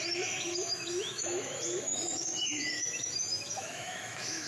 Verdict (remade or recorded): remade